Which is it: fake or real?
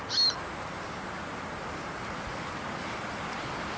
real